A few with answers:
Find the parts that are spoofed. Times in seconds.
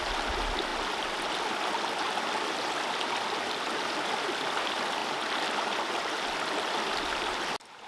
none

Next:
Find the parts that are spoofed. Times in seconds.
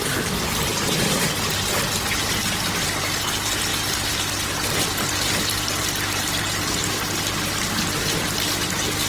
none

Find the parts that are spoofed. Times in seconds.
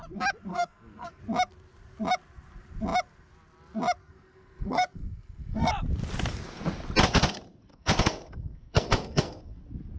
0.5-1.2 (codec, SNAC); 4.0-5.7; 7.7-9.6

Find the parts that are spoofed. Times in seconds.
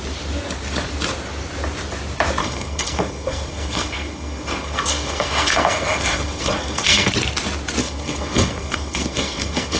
2.4-7.1 (codec, SNAC); 7.8-9.8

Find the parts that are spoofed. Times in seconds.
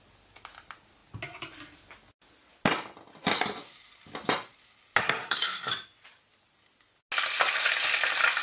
5.0-5.7 (codec, SNAC)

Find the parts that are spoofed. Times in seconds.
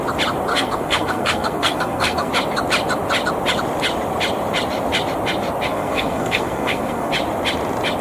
0.5-2.3 (codec, SNAC); 5.7-7.1